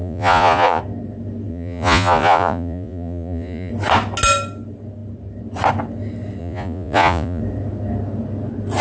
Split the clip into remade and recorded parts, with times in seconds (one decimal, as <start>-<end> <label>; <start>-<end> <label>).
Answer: 0.0-0.8 remade; 0.8-1.5 recorded; 1.5-3.7 remade; 3.7-6.4 recorded; 6.4-7.4 remade; 7.4-8.8 recorded